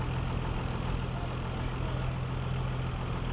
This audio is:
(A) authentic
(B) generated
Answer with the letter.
A